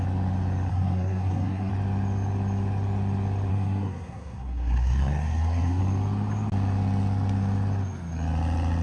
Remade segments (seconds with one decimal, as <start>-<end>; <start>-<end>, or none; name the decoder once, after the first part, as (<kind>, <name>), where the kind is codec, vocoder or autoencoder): 0.7-1.7 (codec, SNAC); 3.5-5.8